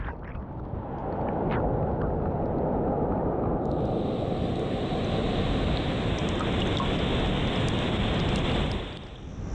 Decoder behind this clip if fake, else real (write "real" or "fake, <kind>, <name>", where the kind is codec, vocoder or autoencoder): real